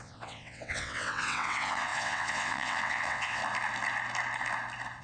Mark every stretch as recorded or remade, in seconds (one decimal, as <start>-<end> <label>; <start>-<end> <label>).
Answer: 0.0-3.4 remade; 3.4-5.0 recorded